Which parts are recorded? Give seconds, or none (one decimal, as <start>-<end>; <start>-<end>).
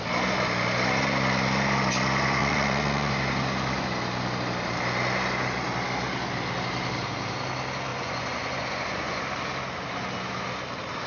0.0-2.4; 3.1-7.9; 9.2-11.1